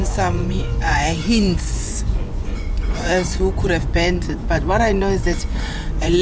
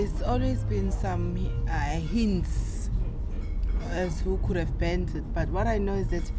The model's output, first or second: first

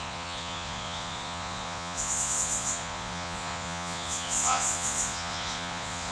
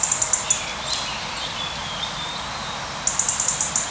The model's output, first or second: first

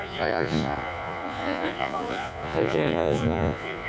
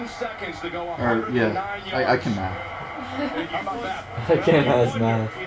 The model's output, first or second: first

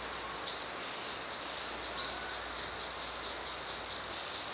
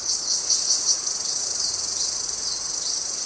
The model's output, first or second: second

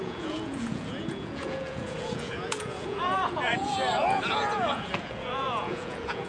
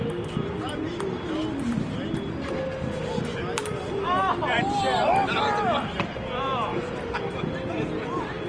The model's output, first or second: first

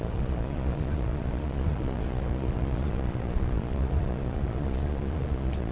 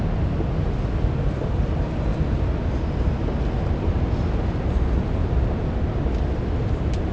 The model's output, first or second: first